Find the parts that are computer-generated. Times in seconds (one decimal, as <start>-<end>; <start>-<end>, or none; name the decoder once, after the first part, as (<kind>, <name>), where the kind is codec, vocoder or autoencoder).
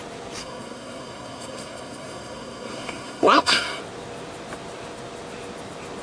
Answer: 0.4-3.8 (codec, SNAC)